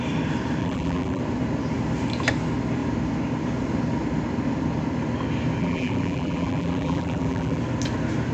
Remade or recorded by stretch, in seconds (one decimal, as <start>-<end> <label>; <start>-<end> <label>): 0.0-0.6 recorded; 0.6-1.2 remade; 1.2-5.6 recorded; 5.6-7.6 remade; 7.6-8.3 recorded

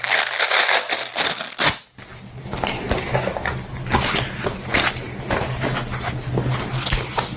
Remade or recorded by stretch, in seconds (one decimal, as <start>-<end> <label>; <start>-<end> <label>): 0.0-7.4 recorded